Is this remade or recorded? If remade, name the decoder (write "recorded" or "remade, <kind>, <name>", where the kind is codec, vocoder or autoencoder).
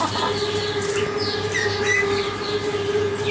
recorded